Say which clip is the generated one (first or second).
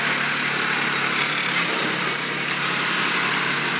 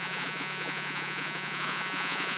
second